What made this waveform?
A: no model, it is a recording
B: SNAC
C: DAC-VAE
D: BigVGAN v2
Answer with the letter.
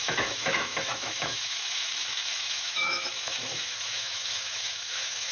C